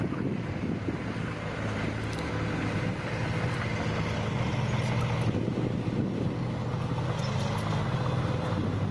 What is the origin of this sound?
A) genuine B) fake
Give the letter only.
A